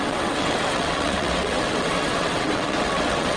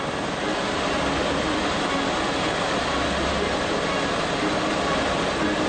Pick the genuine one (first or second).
second